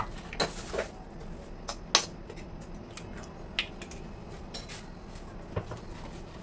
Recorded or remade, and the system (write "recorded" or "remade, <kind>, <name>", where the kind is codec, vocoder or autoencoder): recorded